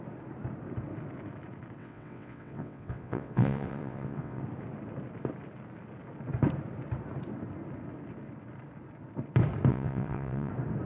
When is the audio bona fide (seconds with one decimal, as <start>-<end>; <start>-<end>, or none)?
0.0-1.8; 4.4-9.7; 10.5-10.9

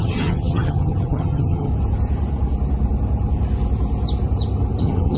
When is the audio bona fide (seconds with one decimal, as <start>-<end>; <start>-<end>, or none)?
1.7-4.8

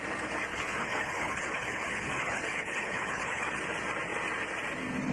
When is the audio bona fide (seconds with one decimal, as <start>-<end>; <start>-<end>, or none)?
0.0-0.5; 3.6-5.1

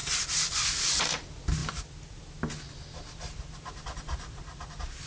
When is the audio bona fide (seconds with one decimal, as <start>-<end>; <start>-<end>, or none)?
1.0-5.1

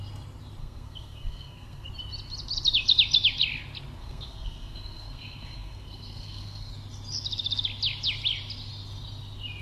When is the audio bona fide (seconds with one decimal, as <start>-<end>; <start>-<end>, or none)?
0.0-0.6; 1.9-4.0; 6.7-9.6

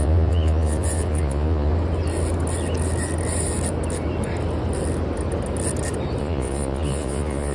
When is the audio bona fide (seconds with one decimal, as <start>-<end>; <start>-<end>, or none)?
1.7-6.2

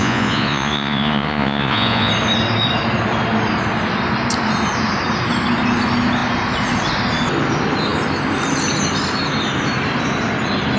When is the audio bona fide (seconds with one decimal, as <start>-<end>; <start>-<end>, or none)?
2.1-10.8